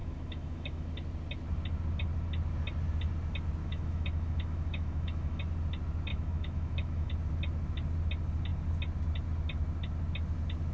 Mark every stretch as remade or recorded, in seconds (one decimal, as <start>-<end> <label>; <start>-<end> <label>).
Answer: 0.0-0.9 remade; 0.9-3.6 recorded; 3.6-5.4 remade; 5.4-6.1 recorded; 6.1-7.1 remade; 7.1-10.7 recorded